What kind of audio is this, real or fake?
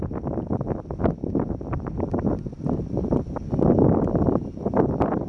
real